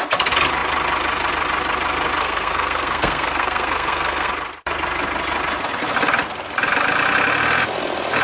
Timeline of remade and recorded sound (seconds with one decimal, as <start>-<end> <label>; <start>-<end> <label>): 0.0-2.2 recorded; 2.2-4.3 remade; 4.3-8.2 recorded